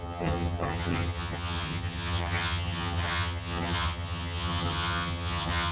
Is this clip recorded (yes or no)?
no